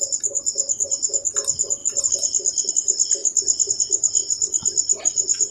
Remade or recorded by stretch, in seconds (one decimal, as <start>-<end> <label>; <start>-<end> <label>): 0.0-1.8 recorded; 1.8-2.7 remade; 2.7-4.2 recorded; 4.2-5.0 remade; 5.0-5.5 recorded